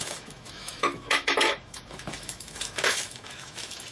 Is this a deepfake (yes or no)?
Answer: yes